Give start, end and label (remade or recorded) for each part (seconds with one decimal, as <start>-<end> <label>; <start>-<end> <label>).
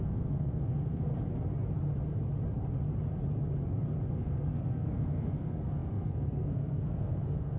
0.0-1.1 remade; 1.1-4.1 recorded; 4.1-7.6 remade